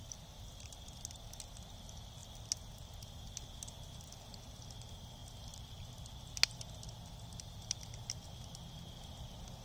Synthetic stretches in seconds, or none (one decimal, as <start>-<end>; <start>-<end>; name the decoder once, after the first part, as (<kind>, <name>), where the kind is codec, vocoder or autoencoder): none